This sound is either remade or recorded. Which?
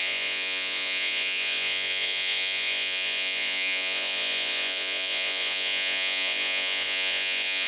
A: remade